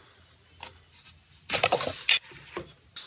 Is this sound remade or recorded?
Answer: recorded